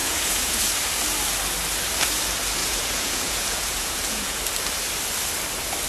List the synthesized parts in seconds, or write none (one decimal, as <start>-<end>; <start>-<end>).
0.0-0.6; 2.6-4.4